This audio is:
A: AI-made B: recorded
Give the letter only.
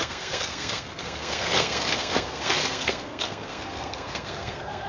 A